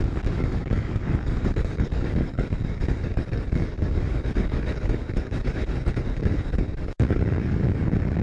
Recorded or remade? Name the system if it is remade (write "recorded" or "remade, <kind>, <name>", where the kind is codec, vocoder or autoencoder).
remade, codec, DAC